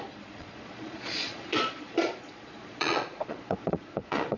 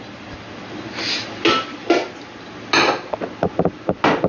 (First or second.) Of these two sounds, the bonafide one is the second